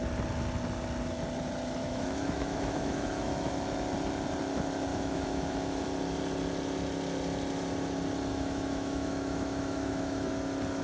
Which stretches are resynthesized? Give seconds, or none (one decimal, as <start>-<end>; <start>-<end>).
1.8-3.5; 4.9-5.8; 8.3-10.3

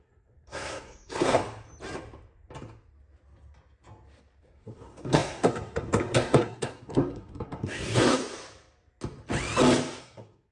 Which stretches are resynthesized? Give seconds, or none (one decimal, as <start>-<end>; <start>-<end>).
0.0-1.4; 4.4-8.2; 10.0-10.5

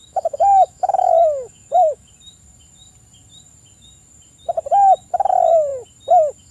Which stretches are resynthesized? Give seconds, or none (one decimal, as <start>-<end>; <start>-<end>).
0.0-2.1